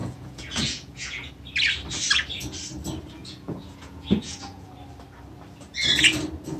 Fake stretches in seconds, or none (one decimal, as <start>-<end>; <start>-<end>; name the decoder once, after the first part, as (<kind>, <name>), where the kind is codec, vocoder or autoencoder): 0.0-1.3 (vocoder, Vocos); 3.2-4.7